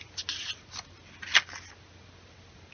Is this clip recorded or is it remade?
recorded